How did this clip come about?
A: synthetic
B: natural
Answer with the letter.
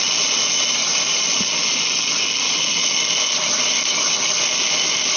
B